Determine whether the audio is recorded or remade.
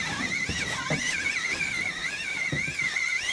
recorded